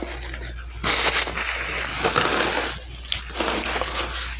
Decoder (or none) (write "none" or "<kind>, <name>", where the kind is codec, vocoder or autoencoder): none